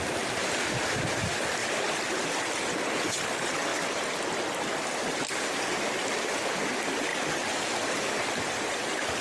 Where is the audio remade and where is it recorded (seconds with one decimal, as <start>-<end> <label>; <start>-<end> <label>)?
0.0-9.2 recorded